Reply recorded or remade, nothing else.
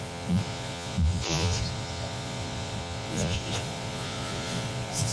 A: remade